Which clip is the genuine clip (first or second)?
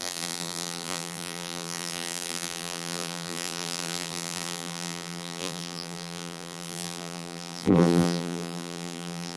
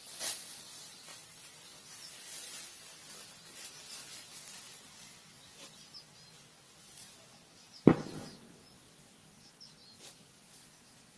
second